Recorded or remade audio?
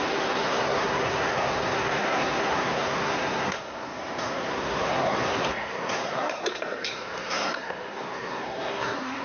remade